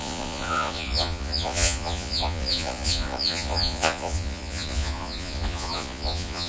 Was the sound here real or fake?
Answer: fake